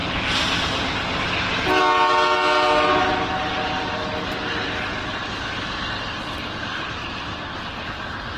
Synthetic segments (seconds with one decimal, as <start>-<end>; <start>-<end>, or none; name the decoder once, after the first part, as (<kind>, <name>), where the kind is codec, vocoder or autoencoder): none